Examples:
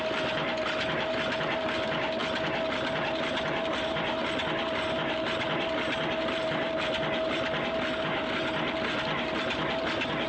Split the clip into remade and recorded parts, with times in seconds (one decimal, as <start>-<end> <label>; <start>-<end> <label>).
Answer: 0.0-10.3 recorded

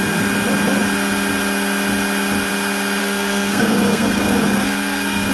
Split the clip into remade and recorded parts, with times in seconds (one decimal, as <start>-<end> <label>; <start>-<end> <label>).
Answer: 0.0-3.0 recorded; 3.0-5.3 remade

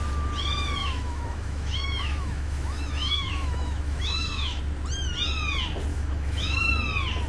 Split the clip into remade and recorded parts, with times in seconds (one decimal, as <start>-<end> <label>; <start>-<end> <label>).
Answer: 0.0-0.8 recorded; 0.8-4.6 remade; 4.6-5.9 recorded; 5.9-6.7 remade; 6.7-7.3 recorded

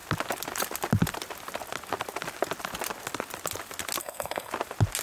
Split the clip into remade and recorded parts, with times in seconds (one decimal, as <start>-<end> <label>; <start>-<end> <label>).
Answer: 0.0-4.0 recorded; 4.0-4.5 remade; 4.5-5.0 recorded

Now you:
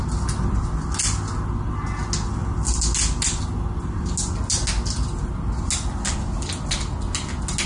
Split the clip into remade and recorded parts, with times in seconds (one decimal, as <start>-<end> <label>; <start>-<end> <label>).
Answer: 0.0-7.7 recorded

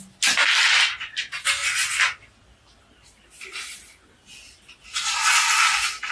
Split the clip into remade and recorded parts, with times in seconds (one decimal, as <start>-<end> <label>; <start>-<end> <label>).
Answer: 0.0-0.4 recorded; 0.4-1.2 remade; 1.2-6.1 recorded

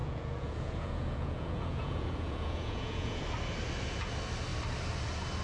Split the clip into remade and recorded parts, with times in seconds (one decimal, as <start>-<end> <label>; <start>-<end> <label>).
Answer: 0.0-3.2 remade; 3.2-5.4 recorded